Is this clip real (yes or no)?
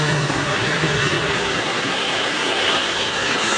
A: no